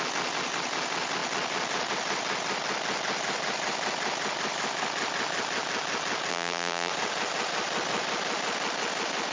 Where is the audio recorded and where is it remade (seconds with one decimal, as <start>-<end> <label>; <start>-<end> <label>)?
0.0-6.3 recorded; 6.3-6.9 remade; 6.9-9.3 recorded